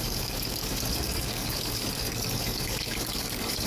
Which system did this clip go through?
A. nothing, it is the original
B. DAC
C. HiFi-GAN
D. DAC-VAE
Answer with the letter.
B